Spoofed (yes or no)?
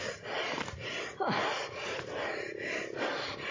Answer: no